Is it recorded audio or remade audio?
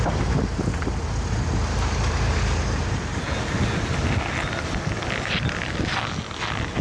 recorded